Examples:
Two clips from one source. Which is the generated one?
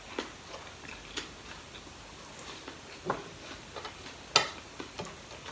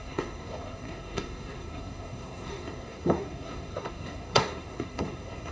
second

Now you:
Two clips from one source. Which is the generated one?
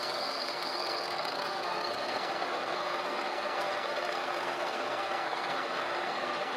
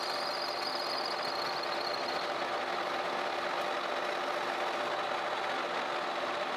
first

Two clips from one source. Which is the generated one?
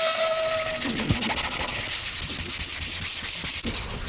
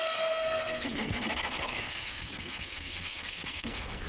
second